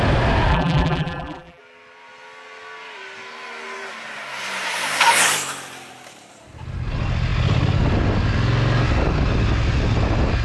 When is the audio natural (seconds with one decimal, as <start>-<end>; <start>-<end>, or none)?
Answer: 0.0-0.5; 1.6-10.4